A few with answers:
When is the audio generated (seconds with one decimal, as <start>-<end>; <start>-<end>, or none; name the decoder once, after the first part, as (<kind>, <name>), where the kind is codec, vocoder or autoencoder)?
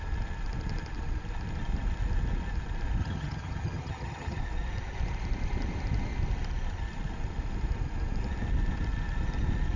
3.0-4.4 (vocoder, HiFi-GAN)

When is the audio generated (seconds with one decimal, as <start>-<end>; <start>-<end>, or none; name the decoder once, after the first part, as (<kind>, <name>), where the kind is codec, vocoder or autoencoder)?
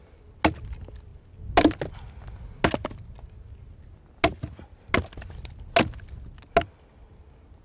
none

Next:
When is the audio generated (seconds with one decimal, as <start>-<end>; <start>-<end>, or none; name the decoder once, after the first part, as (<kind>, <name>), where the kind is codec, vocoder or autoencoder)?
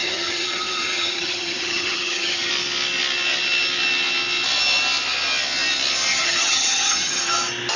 0.0-2.5 (vocoder, HiFi-GAN); 6.1-7.3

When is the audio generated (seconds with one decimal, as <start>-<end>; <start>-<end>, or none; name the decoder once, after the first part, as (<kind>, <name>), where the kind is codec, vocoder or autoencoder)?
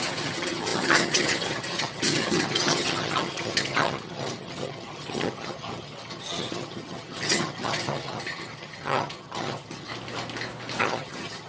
0.0-9.9 (vocoder, HiFi-GAN); 10.8-11.5